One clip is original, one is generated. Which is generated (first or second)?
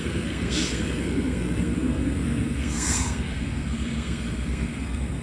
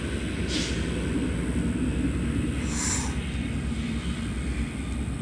first